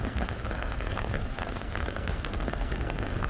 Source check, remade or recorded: remade